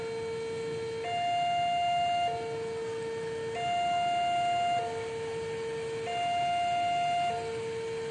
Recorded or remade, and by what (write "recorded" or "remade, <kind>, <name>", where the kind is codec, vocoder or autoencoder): recorded